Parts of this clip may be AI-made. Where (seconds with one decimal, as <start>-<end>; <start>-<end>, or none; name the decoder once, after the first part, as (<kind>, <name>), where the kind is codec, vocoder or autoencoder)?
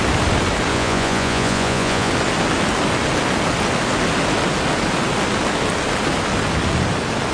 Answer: 0.7-2.1 (vocoder, Vocos)